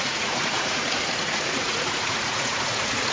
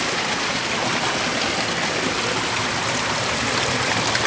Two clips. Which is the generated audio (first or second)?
first